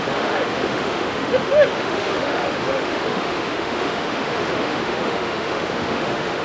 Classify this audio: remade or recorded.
remade